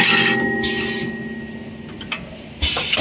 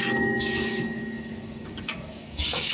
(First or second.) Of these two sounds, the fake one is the second